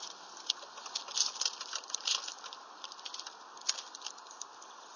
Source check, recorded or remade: recorded